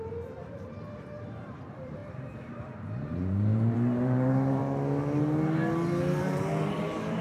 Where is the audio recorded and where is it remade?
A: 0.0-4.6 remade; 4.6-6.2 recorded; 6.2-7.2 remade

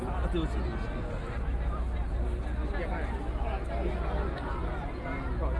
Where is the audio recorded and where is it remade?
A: 0.0-5.6 recorded

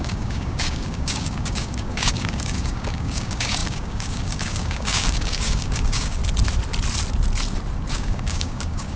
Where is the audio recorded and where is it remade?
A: 0.0-6.2 remade; 6.2-7.9 recorded; 7.9-9.0 remade

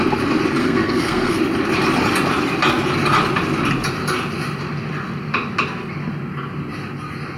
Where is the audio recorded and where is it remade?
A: 0.0-0.6 recorded; 0.6-1.4 remade; 1.4-7.4 recorded

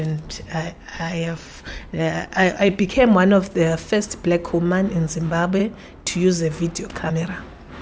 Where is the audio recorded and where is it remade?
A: 0.0-0.9 recorded; 0.9-2.9 remade; 2.9-7.8 recorded